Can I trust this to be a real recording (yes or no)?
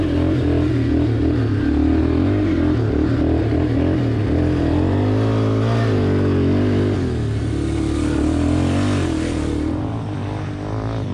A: yes